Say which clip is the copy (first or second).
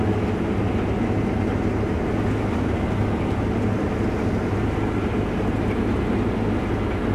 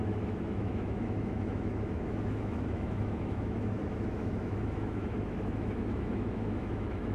second